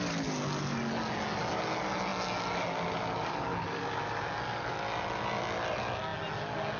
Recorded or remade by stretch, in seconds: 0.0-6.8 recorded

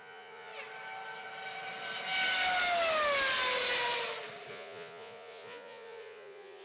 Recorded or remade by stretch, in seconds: 0.0-0.5 remade; 0.5-4.5 recorded; 4.5-6.6 remade

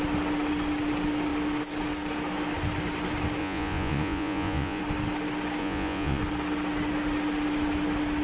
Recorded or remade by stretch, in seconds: 0.0-3.4 recorded; 3.4-4.8 remade; 4.8-5.6 recorded; 5.6-6.2 remade; 6.2-8.2 recorded

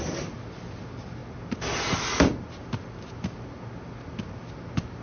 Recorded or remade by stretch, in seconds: 0.0-5.0 recorded

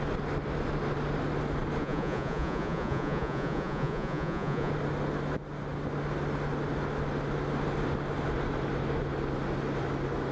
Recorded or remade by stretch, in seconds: 0.0-1.8 recorded; 1.8-4.7 remade; 4.7-10.3 recorded